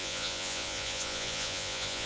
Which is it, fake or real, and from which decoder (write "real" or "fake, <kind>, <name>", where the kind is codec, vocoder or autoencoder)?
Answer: fake, vocoder, Vocos